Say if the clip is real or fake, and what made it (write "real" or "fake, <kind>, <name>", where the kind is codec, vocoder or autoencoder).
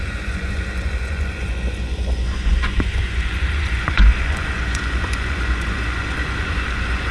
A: fake, vocoder, Vocos